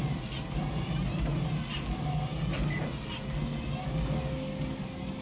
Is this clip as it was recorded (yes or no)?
yes